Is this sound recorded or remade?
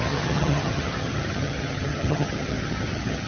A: remade